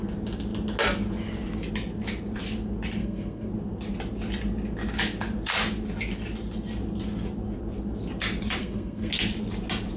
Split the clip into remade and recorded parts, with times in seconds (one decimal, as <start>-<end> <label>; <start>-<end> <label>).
0.0-3.0 recorded; 3.0-3.5 remade; 3.5-8.6 recorded; 8.6-9.1 remade; 9.1-10.0 recorded